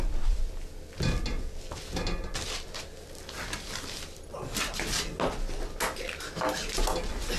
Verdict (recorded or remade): recorded